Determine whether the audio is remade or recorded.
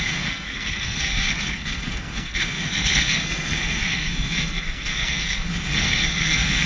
remade